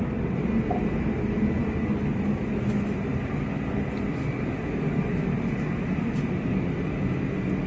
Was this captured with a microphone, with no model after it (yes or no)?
yes